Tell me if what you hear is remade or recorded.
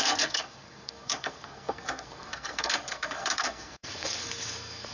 remade